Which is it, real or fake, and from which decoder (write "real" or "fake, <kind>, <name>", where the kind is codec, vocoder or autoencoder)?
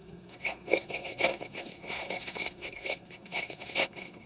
fake, codec, SNAC